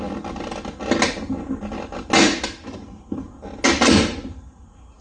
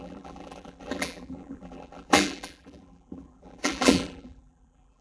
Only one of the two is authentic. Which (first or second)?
first